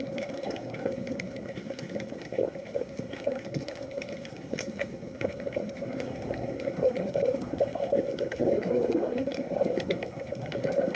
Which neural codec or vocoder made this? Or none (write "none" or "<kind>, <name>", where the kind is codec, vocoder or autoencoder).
codec, SNAC